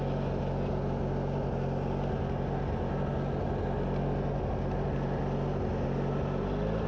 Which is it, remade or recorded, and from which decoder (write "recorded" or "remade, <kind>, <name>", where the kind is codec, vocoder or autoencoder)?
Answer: recorded